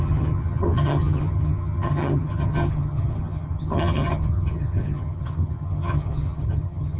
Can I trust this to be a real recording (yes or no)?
no